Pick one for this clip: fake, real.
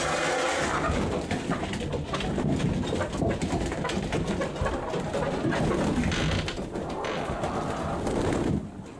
real